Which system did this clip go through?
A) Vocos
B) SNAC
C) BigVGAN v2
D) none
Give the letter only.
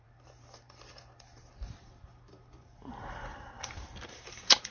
C